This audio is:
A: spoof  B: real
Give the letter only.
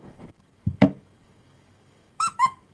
A